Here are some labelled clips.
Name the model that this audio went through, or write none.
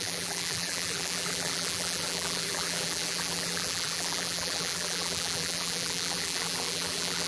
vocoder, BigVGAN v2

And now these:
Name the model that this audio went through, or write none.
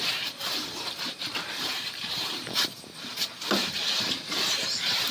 vocoder, BigVGAN v2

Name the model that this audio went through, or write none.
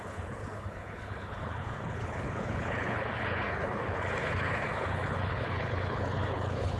codec, HILCodec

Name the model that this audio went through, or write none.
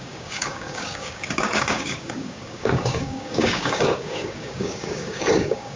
codec, DAC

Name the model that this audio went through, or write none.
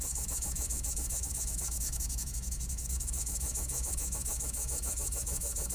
autoencoder, DAC-VAE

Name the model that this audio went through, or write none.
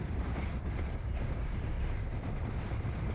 vocoder, BigVGAN v2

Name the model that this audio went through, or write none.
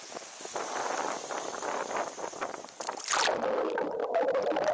none